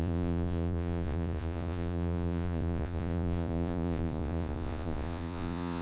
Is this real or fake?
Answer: fake